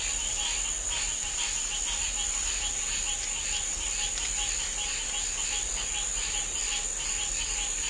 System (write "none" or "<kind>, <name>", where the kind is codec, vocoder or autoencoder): none